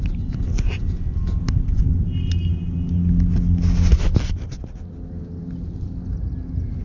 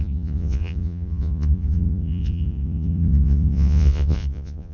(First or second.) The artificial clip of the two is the second